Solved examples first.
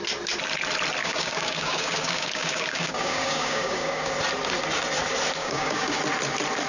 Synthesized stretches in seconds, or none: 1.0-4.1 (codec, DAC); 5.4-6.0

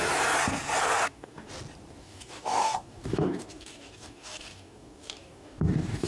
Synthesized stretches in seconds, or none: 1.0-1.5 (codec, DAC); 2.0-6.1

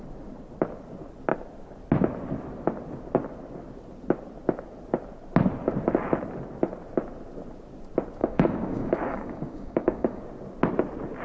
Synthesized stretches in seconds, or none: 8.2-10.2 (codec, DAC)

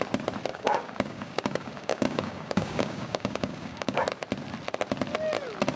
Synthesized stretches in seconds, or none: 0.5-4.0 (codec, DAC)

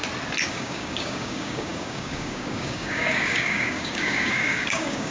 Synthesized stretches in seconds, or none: 0.5-5.1 (codec, DAC)

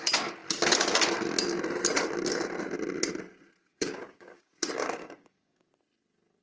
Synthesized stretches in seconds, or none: 3.7-5.7 (codec, DAC)

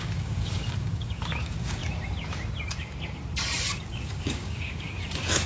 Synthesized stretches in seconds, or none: 0.0-1.8 (codec, DAC); 3.8-5.5

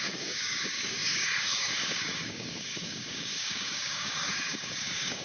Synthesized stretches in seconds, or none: 0.0-5.2 (codec, DAC)